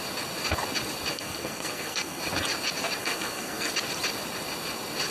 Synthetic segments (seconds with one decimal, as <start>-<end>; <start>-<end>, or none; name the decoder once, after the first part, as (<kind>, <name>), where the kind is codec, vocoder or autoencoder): 1.1-2.2 (codec, SNAC); 3.0-3.7